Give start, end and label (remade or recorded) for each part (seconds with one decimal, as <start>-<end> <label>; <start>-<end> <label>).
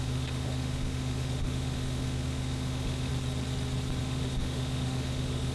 0.0-3.1 remade; 3.1-4.0 recorded; 4.0-5.5 remade